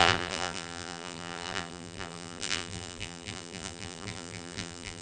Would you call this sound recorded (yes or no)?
no